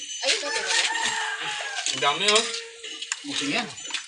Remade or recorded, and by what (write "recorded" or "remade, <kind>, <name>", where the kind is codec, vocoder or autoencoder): recorded